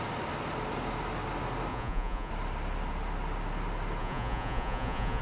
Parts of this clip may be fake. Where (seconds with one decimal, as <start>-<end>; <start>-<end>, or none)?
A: 1.7-2.3; 4.0-5.2